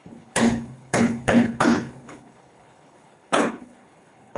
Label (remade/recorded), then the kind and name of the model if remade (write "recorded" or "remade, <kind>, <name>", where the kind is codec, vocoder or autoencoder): remade, codec, HILCodec